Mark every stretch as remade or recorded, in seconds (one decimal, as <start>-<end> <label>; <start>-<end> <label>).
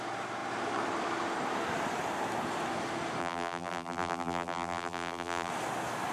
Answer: 0.0-3.2 recorded; 3.2-5.5 remade; 5.5-6.1 recorded